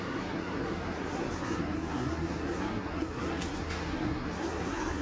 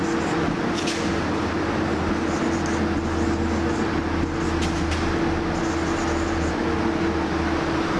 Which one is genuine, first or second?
second